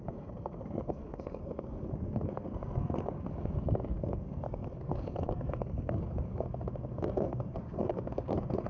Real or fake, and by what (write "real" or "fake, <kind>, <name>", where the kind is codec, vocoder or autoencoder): fake, codec, SNAC